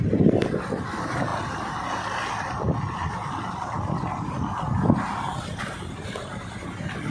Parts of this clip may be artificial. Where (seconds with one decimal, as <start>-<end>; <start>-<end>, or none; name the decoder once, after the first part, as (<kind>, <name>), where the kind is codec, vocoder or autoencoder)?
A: none